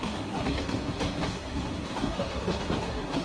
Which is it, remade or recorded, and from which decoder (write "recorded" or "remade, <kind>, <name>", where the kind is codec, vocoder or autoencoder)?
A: remade, codec, SNAC